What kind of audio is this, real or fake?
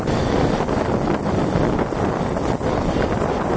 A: real